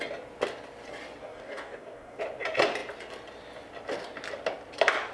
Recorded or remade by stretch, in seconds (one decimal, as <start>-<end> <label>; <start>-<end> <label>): 0.0-1.2 recorded; 1.2-2.2 remade; 2.2-5.1 recorded